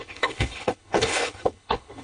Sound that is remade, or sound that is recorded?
remade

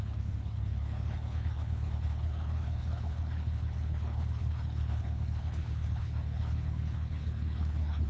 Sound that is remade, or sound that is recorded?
remade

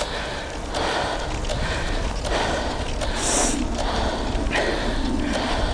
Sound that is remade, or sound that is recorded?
recorded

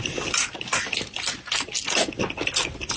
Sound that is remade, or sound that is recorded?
recorded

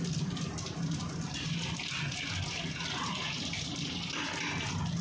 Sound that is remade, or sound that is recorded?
recorded